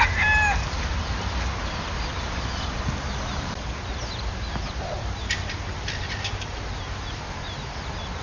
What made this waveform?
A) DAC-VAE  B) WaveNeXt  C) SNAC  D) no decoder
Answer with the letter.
D